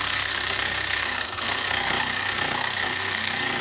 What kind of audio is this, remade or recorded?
remade